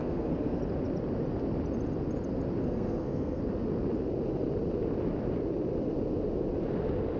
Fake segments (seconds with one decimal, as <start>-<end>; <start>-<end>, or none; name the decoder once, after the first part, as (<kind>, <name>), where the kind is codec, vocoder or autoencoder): 0.0-0.6 (codec, SNAC); 2.6-3.4